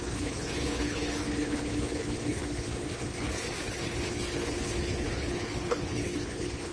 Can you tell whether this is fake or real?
fake